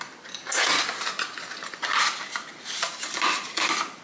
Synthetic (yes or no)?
no